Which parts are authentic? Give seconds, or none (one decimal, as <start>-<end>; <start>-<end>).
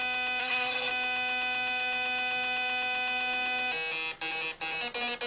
0.0-0.4; 0.9-5.3